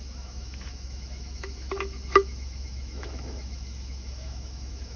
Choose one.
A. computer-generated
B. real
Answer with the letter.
A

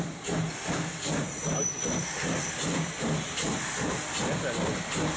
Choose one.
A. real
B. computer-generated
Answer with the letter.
A